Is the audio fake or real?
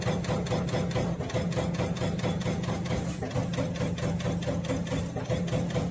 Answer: real